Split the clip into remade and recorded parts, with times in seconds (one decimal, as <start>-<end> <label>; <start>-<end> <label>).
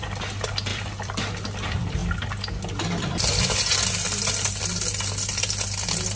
0.0-0.7 recorded; 0.7-1.3 remade; 1.3-6.2 recorded